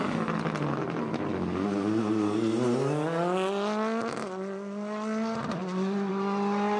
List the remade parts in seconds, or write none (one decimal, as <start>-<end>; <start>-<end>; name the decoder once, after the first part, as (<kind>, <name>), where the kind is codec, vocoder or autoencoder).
none